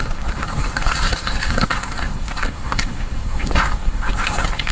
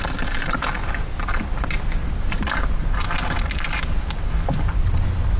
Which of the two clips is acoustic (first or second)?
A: second